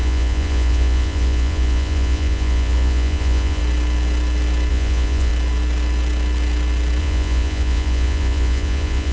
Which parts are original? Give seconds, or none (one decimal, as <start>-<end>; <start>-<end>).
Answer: 3.6-4.7; 5.3-7.0